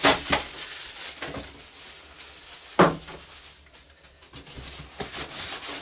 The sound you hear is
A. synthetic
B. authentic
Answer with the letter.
B